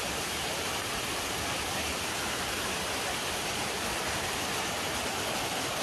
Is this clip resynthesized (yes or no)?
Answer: no